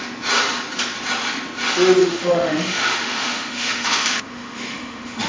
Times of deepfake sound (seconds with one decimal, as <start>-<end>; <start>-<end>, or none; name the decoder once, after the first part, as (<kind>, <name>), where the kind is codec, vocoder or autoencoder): 2.0-5.3 (autoencoder, DAC-VAE)